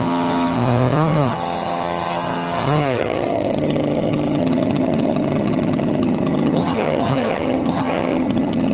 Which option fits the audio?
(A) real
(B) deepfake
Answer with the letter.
B